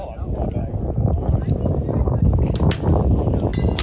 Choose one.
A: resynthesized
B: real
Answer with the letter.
B